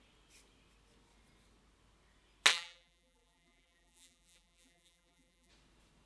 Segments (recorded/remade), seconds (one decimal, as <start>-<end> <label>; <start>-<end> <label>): 0.0-2.5 recorded; 2.5-5.5 remade; 5.5-6.1 recorded